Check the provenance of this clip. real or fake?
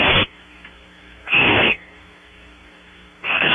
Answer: fake